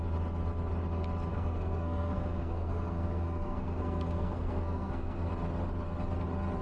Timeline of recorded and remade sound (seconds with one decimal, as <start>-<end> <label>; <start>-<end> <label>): 0.0-1.3 recorded; 1.3-5.3 remade; 5.3-6.6 recorded